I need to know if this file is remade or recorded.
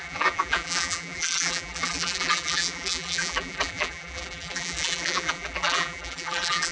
remade